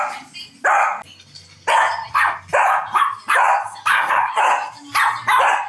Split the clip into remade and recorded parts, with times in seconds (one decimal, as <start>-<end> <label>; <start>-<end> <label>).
0.0-3.9 recorded; 3.9-4.4 remade; 4.4-5.7 recorded